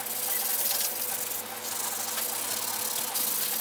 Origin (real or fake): real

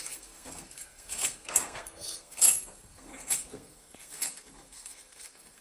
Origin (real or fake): fake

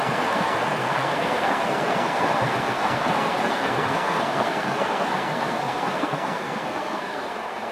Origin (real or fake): fake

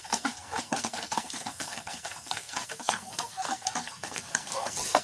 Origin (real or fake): fake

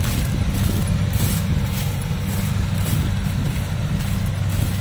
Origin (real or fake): real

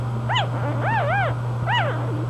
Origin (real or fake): real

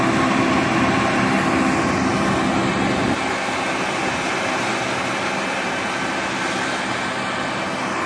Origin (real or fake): real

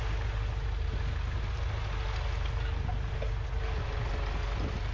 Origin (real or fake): real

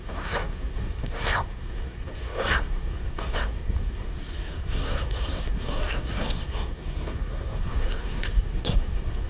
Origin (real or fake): fake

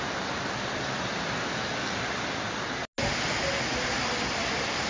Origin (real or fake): real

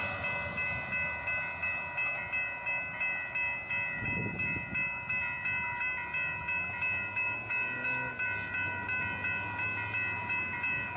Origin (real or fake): real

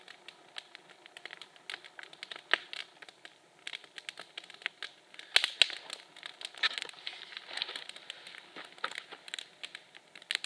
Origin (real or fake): real